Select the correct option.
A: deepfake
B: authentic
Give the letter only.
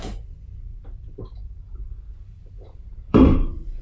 A